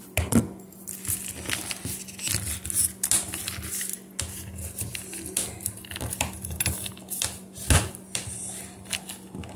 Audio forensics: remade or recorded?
recorded